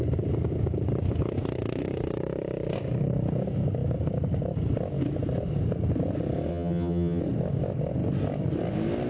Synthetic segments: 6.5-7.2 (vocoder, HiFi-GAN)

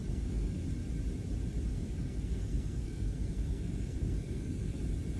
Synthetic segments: 0.0-0.6 (codec, SNAC); 1.7-4.8

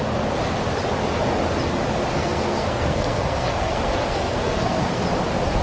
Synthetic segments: 2.2-5.0 (codec, SNAC)

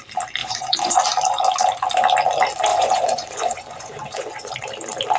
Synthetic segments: 0.4-1.0 (vocoder, Vocos); 2.7-4.5

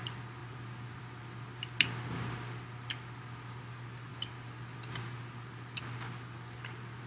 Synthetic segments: none